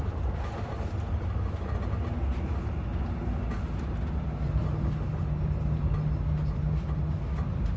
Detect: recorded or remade recorded